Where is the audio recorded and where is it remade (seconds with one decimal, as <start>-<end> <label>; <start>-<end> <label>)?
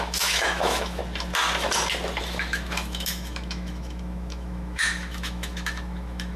0.0-1.0 remade; 1.0-2.2 recorded; 2.2-6.4 remade